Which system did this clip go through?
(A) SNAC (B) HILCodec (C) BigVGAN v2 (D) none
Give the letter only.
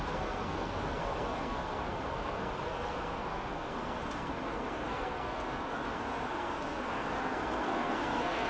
A